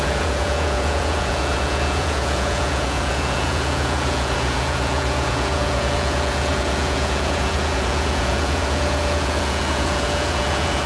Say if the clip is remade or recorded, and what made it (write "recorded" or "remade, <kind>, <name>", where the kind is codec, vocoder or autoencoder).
remade, vocoder, Vocos